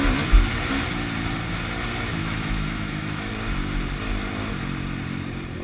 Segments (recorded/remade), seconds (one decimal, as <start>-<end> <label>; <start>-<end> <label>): 0.0-2.2 recorded; 2.2-3.3 remade; 3.3-5.6 recorded